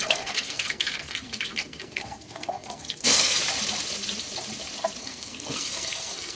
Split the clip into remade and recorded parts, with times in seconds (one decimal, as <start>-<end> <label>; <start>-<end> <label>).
0.0-3.4 remade; 3.4-5.0 recorded; 5.0-6.3 remade